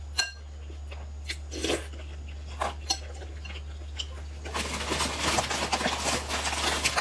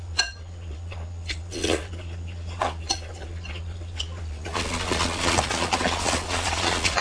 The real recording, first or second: first